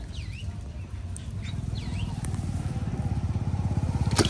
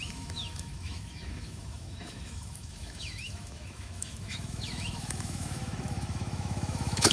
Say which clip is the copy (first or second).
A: second